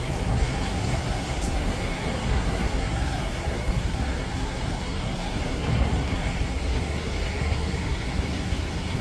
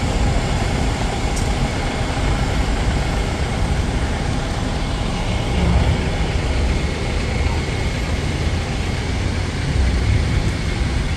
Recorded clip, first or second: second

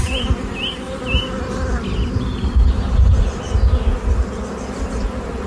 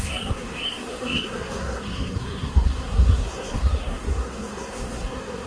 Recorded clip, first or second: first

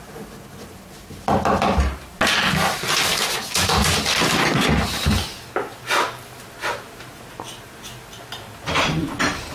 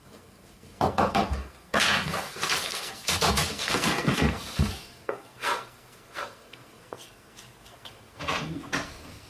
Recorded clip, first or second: first